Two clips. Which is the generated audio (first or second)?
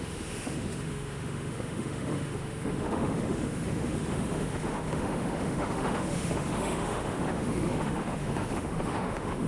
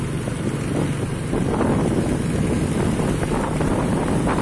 first